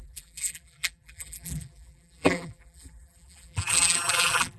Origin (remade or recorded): remade